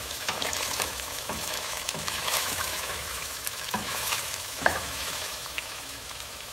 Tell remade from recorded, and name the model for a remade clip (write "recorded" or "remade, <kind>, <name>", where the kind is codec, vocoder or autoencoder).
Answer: remade, autoencoder, DAC-VAE